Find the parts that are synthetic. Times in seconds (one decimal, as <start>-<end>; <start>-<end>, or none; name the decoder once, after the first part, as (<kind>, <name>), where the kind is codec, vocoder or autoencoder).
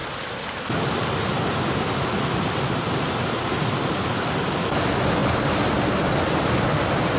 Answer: none